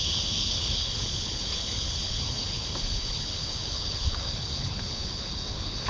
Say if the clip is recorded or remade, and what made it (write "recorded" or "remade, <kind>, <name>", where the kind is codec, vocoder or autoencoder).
remade, codec, HILCodec